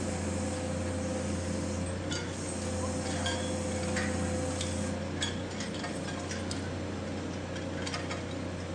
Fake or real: real